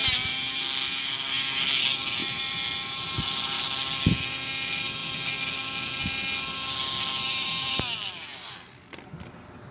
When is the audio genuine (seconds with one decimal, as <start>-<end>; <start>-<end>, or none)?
0.0-9.7